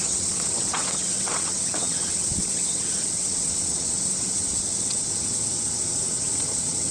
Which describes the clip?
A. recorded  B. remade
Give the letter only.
B